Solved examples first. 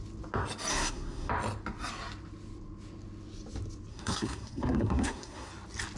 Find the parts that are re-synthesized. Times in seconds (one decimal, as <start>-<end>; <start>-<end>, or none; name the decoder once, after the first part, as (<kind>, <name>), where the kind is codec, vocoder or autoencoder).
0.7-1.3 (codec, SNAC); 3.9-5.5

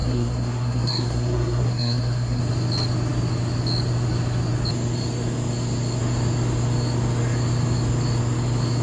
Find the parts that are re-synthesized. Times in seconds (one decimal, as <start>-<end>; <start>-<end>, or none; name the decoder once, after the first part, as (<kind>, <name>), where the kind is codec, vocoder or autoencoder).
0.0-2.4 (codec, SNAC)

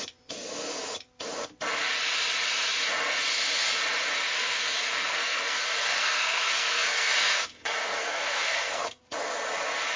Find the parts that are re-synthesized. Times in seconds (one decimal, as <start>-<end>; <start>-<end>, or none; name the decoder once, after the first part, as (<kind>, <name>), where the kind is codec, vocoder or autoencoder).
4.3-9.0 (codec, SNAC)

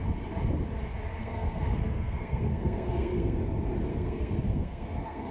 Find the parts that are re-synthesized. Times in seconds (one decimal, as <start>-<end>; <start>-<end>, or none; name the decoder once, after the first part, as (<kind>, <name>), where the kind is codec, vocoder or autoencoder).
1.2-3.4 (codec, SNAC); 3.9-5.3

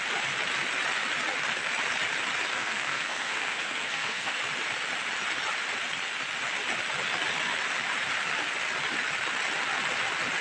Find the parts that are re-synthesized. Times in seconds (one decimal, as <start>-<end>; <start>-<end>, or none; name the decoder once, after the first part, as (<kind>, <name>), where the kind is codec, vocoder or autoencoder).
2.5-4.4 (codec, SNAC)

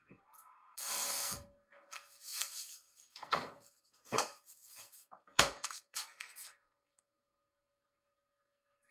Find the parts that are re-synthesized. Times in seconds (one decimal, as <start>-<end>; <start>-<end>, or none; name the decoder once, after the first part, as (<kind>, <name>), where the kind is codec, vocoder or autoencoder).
0.0-8.9 (codec, SNAC)